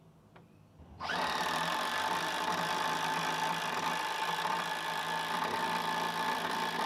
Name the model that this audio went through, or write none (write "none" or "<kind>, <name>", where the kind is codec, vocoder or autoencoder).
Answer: none